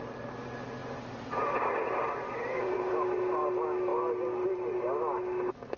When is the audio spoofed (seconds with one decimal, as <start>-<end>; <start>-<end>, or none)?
0.8-2.9